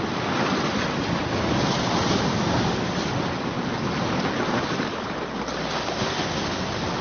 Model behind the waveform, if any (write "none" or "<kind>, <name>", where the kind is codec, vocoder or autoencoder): none